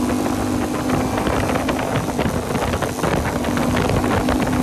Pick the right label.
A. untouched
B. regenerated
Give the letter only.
A